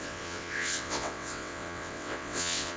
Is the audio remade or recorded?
remade